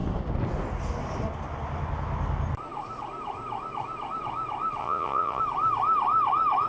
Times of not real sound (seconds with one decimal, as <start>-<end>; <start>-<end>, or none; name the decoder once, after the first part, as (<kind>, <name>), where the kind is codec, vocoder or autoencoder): 4.8-5.4 (vocoder, Vocos)

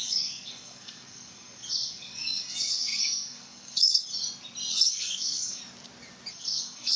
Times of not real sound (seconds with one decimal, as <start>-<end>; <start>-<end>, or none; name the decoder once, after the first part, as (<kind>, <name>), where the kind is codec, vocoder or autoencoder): 0.0-4.0 (codec, SNAC); 4.7-5.6; 6.3-7.0